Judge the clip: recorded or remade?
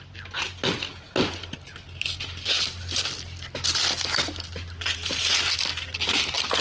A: recorded